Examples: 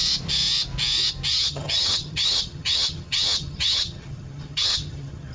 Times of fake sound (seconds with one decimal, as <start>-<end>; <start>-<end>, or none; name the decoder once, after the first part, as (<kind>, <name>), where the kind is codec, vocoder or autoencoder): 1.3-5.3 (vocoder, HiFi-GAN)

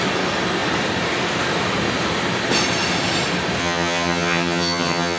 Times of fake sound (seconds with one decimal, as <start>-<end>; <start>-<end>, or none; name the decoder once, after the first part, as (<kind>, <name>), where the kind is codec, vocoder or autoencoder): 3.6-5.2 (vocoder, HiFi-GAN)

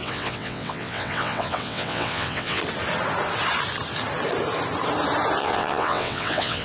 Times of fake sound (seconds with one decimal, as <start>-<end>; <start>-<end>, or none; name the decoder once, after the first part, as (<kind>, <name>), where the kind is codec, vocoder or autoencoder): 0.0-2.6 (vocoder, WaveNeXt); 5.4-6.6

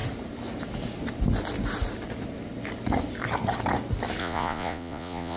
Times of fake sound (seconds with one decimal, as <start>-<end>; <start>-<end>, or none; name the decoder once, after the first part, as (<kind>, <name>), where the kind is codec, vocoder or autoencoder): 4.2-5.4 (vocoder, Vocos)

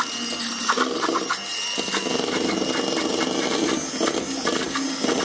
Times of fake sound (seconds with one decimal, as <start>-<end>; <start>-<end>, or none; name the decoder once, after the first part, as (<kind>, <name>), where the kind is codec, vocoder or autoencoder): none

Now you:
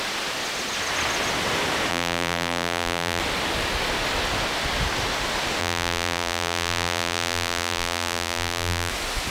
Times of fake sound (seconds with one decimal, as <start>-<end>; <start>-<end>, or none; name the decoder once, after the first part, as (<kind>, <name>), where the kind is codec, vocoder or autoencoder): 1.9-3.2 (vocoder, BigVGAN v2); 5.6-8.9

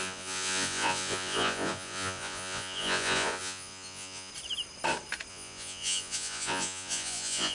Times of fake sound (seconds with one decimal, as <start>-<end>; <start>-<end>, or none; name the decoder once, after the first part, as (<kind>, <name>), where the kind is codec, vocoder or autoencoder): 0.0-4.3 (vocoder, Vocos); 5.3-7.5